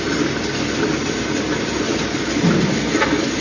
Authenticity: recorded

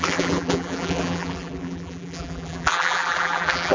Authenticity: remade